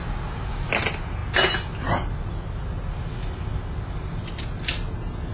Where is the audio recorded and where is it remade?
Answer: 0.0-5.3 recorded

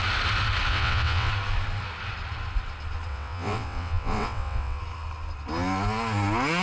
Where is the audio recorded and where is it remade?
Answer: 0.0-0.7 recorded; 0.7-1.3 remade; 1.3-3.1 recorded; 3.1-4.8 remade; 4.8-6.6 recorded

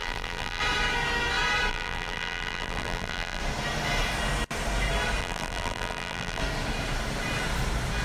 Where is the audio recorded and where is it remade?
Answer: 0.0-0.6 remade; 0.6-1.7 recorded; 1.7-3.4 remade; 3.4-5.2 recorded; 5.2-6.4 remade; 6.4-8.0 recorded

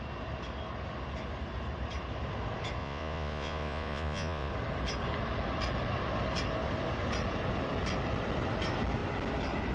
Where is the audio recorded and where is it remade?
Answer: 0.0-2.8 recorded; 2.8-4.5 remade; 4.5-9.7 recorded